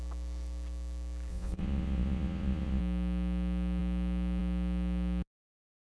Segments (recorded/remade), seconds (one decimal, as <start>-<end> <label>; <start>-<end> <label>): 0.0-1.3 recorded; 1.3-2.8 remade; 2.8-5.9 recorded